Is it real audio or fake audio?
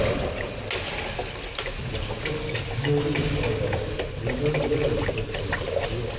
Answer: real